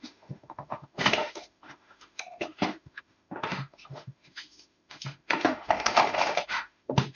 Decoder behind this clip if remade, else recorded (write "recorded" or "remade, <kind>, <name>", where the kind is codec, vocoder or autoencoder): remade, autoencoder, DAC-VAE